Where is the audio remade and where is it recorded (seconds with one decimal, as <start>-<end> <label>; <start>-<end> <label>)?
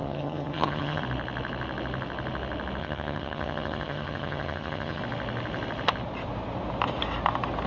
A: 0.0-1.0 remade; 1.0-2.8 recorded; 2.8-5.0 remade; 5.0-7.7 recorded